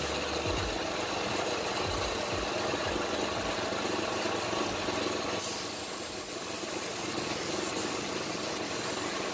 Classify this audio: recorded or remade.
recorded